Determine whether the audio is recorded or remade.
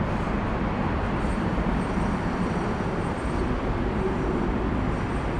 remade